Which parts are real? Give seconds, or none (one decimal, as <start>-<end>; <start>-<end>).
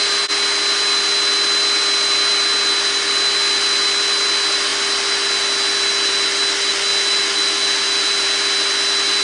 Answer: 0.0-9.2